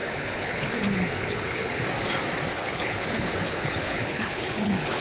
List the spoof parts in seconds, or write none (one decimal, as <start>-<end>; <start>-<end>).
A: 0.0-1.8; 2.5-5.0